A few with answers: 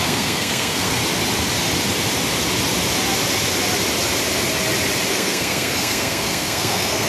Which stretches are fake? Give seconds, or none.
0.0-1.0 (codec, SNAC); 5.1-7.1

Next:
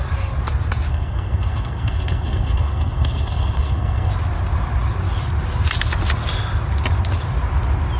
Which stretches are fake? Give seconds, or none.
0.9-4.1 (codec, SNAC)

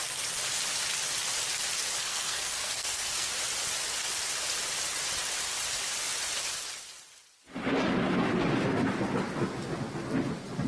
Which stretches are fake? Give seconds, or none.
2.0-3.3 (codec, SNAC)

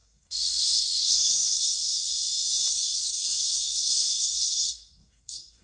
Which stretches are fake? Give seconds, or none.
0.0-2.1 (codec, SNAC); 2.7-5.6

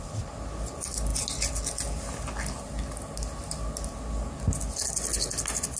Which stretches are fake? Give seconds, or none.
none